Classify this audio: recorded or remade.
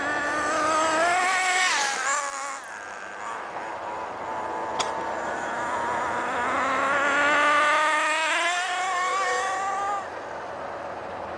recorded